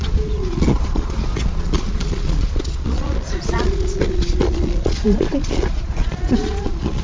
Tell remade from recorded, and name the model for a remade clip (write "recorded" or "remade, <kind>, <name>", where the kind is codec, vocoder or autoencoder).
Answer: remade, vocoder, Vocos